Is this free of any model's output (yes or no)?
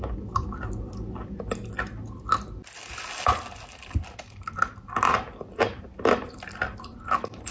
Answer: yes